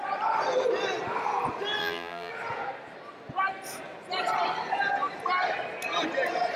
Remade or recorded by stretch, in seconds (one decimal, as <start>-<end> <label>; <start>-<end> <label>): 0.0-1.8 recorded; 1.8-2.3 remade; 2.3-6.6 recorded